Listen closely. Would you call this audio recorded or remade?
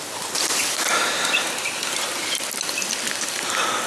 recorded